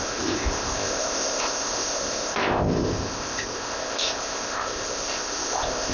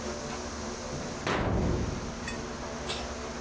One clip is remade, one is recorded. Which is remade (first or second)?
first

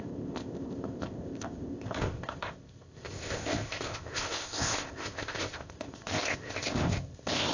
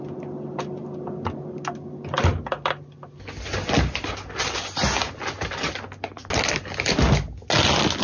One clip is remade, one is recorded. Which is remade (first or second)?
first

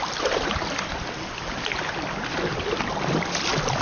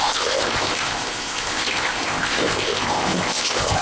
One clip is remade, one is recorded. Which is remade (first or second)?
second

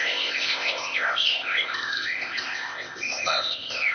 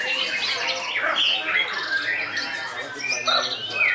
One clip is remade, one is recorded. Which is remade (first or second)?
first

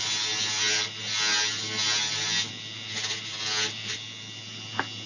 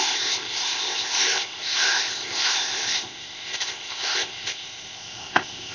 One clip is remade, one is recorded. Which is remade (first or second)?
second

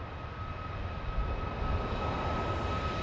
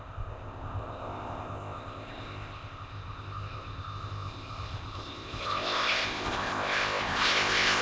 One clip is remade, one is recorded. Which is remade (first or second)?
second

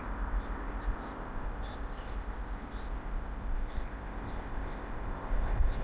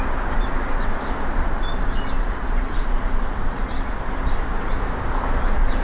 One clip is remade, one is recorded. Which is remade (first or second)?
first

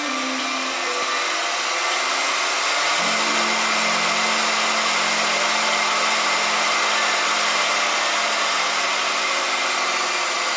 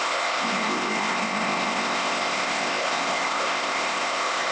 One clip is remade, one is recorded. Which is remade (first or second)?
second